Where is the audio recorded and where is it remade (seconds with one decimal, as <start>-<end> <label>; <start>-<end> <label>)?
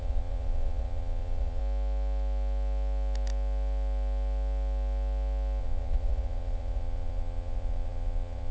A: 0.0-1.6 remade; 1.6-5.6 recorded; 5.6-8.5 remade